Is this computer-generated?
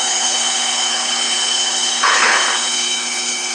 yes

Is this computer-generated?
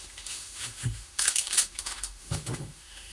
yes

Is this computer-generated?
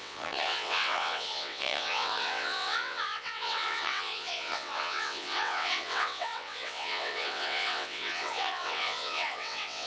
yes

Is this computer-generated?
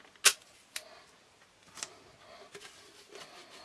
no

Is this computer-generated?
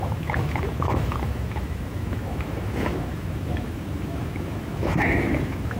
yes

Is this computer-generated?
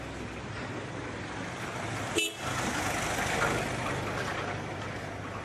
no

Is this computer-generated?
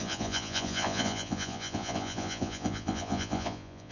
yes